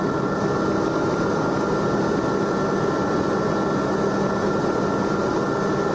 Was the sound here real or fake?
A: real